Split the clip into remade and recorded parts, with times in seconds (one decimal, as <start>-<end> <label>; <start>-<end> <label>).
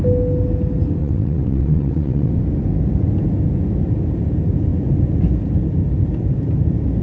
0.0-1.0 recorded; 1.0-2.3 remade; 2.3-7.0 recorded